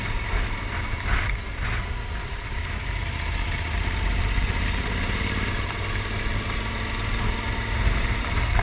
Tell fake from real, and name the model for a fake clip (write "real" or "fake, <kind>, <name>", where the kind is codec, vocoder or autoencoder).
real